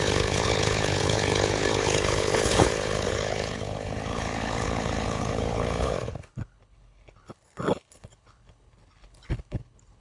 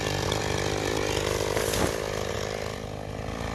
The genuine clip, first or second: second